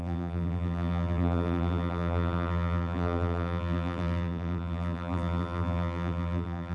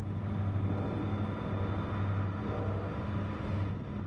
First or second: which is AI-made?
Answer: first